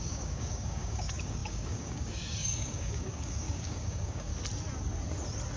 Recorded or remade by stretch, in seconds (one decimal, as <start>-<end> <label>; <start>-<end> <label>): 0.0-4.3 remade; 4.3-5.6 recorded